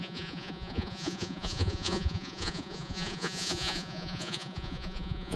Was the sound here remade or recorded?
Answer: remade